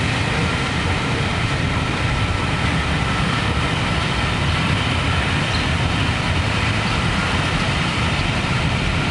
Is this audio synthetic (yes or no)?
yes